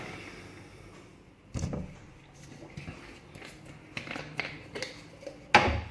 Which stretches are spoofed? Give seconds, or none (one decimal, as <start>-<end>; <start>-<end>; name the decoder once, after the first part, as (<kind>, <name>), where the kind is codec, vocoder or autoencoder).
none